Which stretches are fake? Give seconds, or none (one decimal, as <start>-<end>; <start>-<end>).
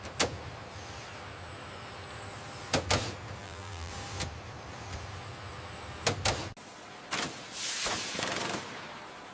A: 3.4-3.9